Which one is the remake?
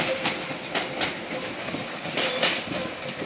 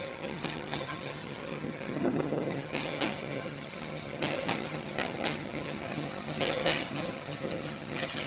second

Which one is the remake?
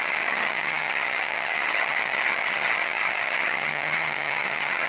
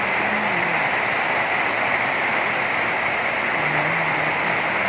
first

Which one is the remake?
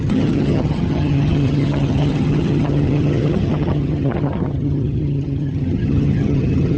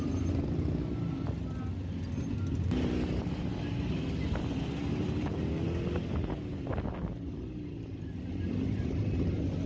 first